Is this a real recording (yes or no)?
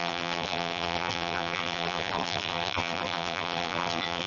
no